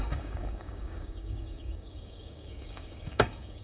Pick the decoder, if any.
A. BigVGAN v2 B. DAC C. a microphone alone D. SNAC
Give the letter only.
B